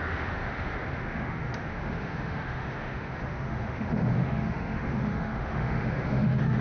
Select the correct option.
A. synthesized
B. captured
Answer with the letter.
A